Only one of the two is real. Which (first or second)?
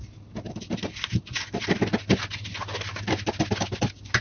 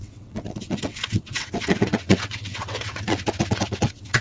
first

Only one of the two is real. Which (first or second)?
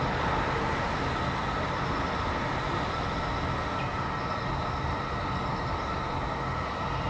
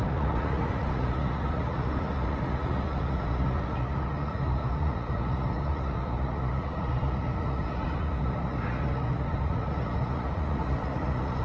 first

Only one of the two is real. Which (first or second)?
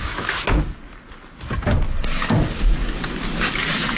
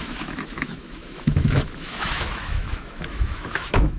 first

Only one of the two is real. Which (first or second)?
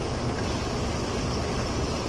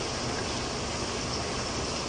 second